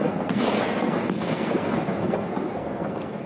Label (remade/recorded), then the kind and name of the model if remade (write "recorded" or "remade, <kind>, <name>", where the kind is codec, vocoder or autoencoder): remade, codec, SNAC